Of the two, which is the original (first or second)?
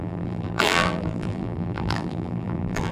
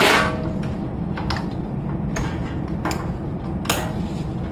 second